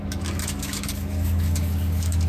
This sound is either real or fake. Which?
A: fake